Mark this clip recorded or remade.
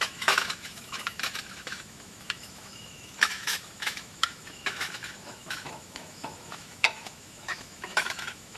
remade